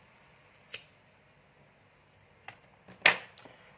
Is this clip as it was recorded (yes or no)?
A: yes